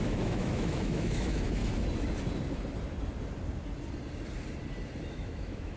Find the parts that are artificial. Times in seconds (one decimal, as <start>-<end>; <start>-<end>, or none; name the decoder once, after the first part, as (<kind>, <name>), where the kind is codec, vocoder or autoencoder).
0.0-1.6 (autoencoder, DAC-VAE); 5.1-5.8